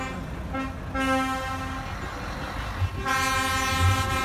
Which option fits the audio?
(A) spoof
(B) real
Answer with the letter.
B